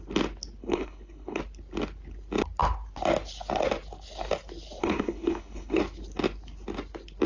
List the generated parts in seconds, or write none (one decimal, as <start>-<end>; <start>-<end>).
0.6-1.4; 4.8-5.8